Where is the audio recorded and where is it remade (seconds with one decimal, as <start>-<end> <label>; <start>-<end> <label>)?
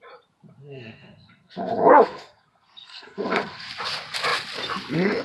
0.0-0.6 recorded; 0.6-3.7 remade; 3.7-5.2 recorded